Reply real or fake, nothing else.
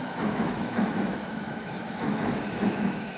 fake